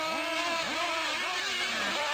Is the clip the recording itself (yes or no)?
yes